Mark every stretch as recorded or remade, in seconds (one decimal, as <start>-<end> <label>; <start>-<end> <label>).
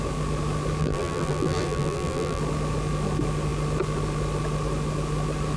0.0-0.8 recorded; 0.8-2.4 remade; 2.4-5.6 recorded